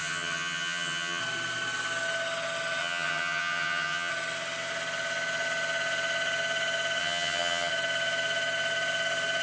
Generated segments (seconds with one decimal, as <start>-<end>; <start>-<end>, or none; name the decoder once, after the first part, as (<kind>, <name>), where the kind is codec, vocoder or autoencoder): 0.0-1.2 (vocoder, HiFi-GAN); 2.8-4.1; 7.0-7.7